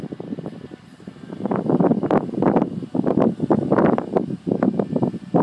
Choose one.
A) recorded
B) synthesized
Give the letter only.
A